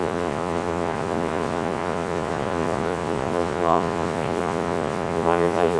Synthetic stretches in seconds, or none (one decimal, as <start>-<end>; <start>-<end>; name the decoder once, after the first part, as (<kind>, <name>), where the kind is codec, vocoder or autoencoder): 0.0-5.8 (vocoder, Vocos)